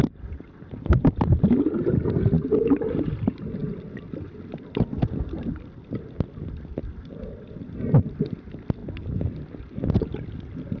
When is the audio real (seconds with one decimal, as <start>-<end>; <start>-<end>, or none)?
0.0-10.8